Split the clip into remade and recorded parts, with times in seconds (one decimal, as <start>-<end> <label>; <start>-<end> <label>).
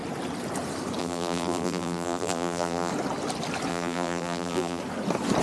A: 0.0-1.0 recorded; 1.0-2.9 remade; 2.9-3.7 recorded; 3.7-4.8 remade; 4.8-5.4 recorded